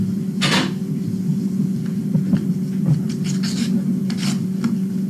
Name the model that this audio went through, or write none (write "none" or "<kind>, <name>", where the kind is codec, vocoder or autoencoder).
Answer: none